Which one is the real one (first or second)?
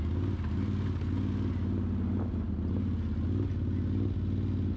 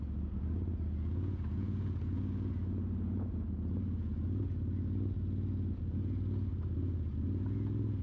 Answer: first